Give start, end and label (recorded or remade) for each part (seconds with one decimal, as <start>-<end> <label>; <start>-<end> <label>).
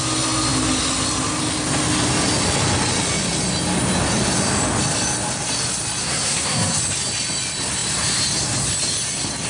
0.0-6.0 recorded; 6.0-6.8 remade; 6.8-9.5 recorded